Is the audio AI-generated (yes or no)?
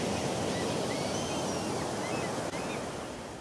no